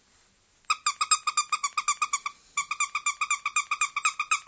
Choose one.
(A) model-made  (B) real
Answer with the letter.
B